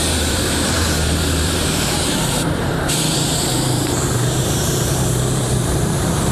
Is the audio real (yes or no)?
no